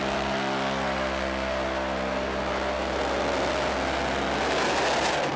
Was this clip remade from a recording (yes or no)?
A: no